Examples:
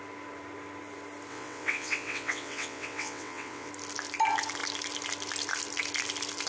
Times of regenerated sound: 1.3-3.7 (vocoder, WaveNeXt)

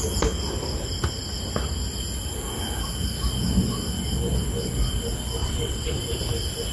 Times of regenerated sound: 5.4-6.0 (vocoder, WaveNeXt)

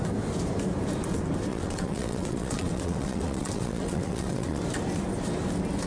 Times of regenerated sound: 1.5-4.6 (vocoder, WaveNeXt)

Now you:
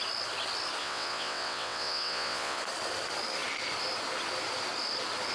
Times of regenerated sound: 0.8-2.6 (vocoder, WaveNeXt)